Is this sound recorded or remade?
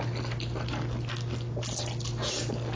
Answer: recorded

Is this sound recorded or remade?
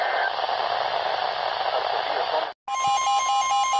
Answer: recorded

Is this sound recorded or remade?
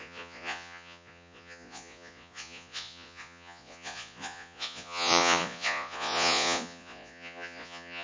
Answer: remade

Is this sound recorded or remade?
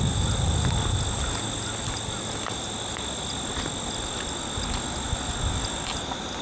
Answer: recorded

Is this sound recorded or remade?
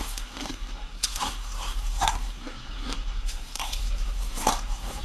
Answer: remade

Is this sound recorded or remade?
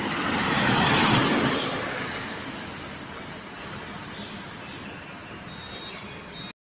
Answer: recorded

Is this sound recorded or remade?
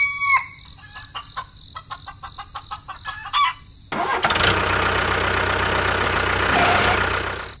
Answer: recorded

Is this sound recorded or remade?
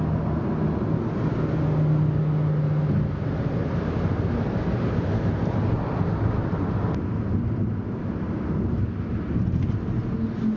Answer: recorded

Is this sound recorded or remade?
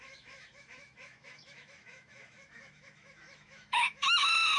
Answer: remade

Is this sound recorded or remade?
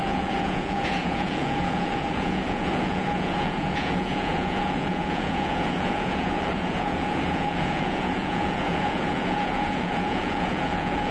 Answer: remade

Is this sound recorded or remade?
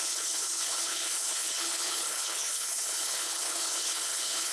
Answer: remade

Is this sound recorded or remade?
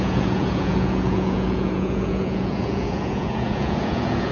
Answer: remade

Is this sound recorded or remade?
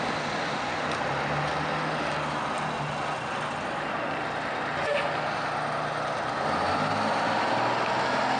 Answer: recorded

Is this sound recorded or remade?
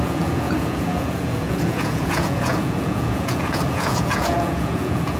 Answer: remade